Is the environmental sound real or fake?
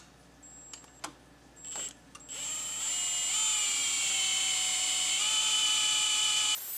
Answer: real